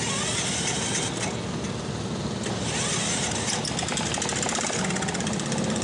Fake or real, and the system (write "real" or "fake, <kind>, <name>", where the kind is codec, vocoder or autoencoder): real